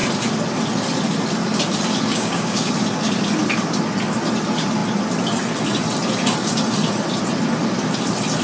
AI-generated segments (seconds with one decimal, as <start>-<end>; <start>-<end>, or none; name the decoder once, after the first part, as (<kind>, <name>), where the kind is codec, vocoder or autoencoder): 2.1-2.7 (codec, DAC)